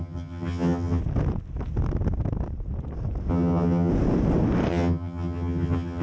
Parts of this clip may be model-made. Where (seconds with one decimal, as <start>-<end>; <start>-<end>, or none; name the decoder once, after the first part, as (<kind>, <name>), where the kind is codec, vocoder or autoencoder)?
0.0-1.0 (vocoder, HiFi-GAN); 3.3-3.9; 4.7-6.0